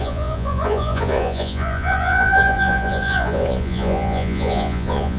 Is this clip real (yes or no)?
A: no